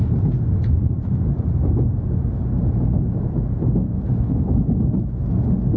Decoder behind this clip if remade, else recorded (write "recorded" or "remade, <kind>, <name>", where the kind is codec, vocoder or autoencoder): recorded